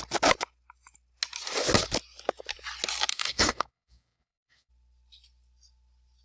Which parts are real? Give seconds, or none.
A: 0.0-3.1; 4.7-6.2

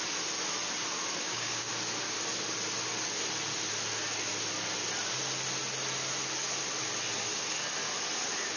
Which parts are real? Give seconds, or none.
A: 0.0-1.2; 1.7-8.6

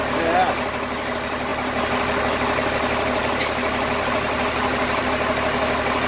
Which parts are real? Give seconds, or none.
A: 0.0-6.1

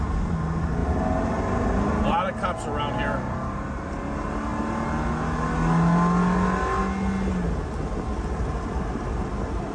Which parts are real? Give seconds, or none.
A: 0.0-9.7

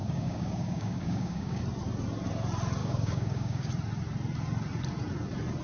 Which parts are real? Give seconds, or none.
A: 1.6-2.8; 3.7-5.6